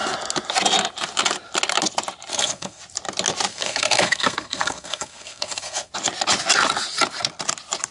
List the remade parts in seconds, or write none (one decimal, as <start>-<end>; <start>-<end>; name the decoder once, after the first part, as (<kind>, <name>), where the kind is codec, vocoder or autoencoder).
2.3-2.8 (codec, SNAC); 3.5-5.9